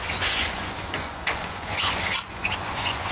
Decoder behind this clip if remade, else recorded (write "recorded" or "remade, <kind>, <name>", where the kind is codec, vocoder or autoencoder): remade, vocoder, Vocos